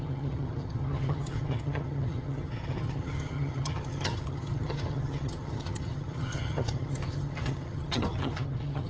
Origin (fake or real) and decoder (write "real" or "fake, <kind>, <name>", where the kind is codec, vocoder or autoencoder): fake, vocoder, HiFi-GAN